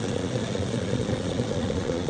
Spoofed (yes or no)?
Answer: yes